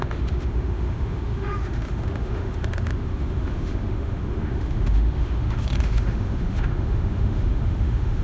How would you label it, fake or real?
fake